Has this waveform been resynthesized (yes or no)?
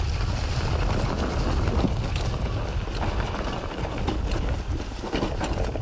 no